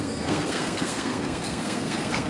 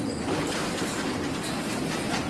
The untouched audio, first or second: second